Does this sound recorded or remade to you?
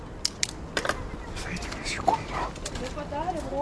recorded